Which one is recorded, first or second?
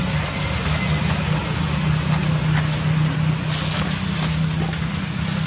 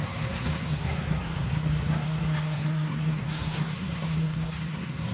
first